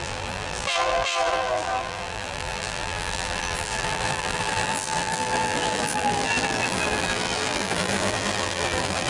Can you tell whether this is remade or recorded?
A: remade